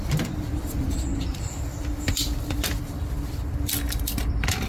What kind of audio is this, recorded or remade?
remade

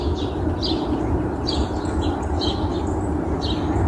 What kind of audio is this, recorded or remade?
recorded